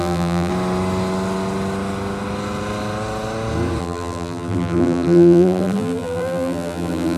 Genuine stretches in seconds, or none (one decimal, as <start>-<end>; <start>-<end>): 0.5-3.8